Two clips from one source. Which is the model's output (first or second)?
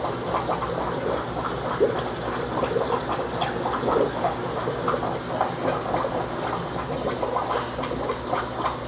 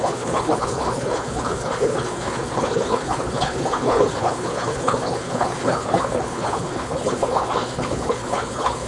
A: second